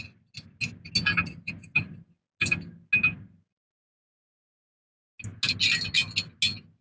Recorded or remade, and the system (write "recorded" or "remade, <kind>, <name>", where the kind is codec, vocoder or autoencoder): recorded